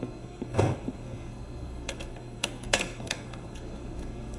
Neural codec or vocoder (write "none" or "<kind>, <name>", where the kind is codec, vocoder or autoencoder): codec, SNAC